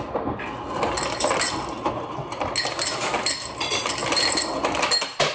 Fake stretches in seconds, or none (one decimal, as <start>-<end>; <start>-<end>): none